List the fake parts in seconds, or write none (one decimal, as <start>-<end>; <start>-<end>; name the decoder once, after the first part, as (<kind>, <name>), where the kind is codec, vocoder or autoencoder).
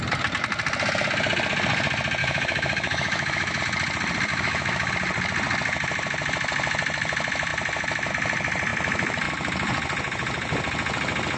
2.2-3.6 (autoencoder, DAC-VAE); 4.3-4.9